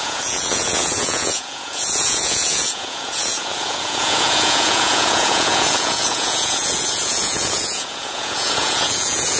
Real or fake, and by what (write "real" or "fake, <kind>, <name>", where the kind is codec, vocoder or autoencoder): fake, vocoder, Vocos